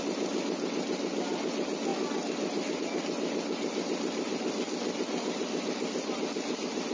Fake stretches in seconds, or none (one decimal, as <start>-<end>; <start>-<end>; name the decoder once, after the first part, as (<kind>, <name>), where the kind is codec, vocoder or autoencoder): none